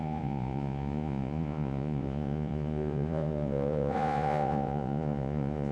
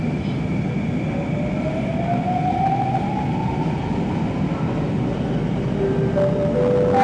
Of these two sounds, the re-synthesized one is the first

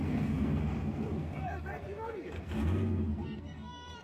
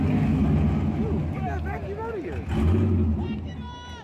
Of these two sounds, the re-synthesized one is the first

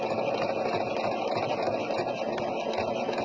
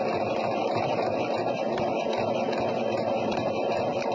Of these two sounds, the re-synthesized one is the second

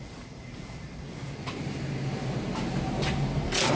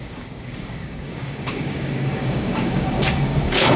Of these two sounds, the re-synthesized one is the second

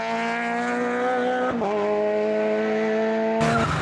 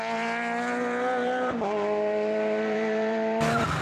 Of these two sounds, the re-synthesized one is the second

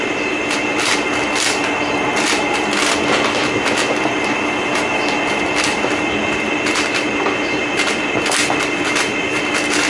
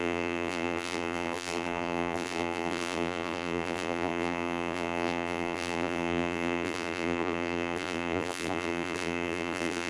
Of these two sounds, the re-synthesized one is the second